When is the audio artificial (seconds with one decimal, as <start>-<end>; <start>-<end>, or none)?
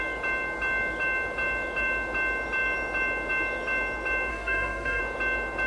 4.3-5.0